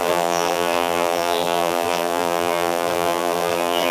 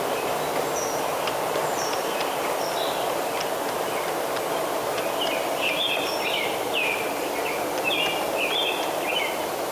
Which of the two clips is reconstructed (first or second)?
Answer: first